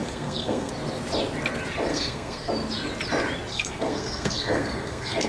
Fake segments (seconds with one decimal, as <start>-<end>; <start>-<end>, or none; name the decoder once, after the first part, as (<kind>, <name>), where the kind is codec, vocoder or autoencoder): 0.0-0.7 (codec, SNAC); 1.9-2.5; 3.5-5.3